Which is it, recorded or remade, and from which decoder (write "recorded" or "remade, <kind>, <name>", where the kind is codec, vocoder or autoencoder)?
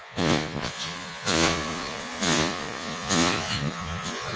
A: remade, vocoder, Vocos